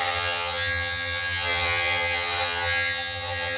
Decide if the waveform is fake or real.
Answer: fake